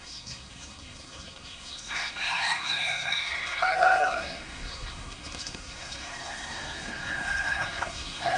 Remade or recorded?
remade